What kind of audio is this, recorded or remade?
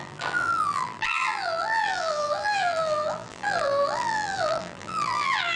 remade